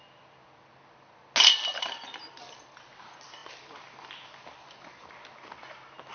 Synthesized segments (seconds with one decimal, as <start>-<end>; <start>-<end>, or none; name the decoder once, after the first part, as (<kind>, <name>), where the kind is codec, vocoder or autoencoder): none